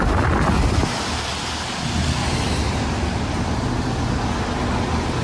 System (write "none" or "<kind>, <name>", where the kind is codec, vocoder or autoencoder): none